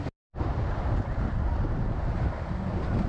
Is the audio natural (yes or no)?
yes